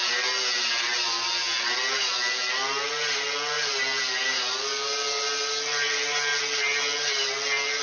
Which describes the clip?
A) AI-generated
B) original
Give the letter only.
B